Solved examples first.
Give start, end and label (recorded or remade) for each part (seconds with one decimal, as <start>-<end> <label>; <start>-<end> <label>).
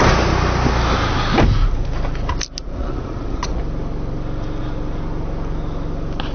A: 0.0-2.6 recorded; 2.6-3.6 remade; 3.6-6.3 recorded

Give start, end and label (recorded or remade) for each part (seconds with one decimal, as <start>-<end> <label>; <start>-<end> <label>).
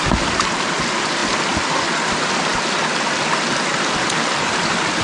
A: 0.0-5.0 recorded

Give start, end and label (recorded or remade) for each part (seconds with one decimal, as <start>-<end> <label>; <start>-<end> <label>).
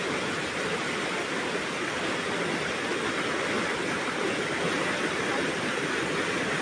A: 0.0-6.6 recorded